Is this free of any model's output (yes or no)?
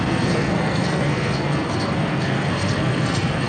no